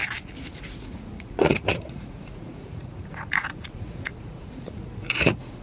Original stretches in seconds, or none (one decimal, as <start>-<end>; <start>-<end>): 0.0-0.6